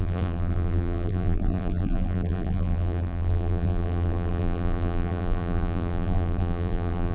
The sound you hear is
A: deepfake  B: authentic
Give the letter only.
A